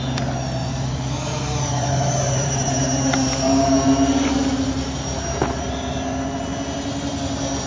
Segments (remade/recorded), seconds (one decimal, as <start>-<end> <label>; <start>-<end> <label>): 0.0-0.6 recorded; 0.6-4.3 remade; 4.3-7.7 recorded